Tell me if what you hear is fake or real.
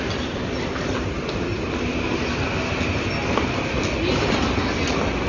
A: real